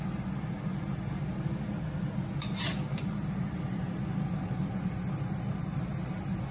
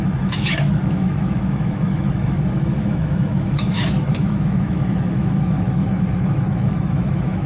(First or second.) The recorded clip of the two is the first